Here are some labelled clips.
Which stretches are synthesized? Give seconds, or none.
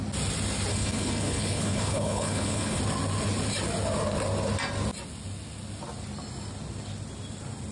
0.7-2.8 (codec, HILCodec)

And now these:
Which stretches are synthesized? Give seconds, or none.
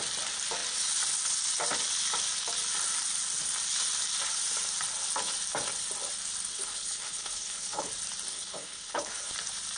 6.5-7.9 (codec, HILCodec); 8.3-9.3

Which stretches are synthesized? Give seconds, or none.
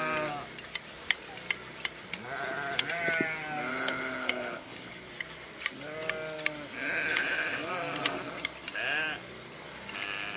3.7-5.1 (codec, HILCodec); 7.1-7.7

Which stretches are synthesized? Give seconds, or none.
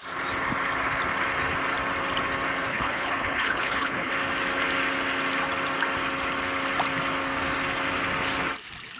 2.7-4.1 (codec, HILCodec)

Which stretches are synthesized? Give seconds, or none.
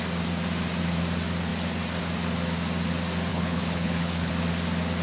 3.3-4.3 (codec, HILCodec)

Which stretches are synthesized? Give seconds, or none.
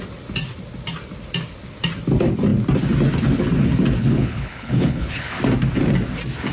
4.0-5.4 (codec, HILCodec)